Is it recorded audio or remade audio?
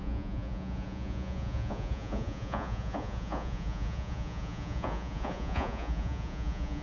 remade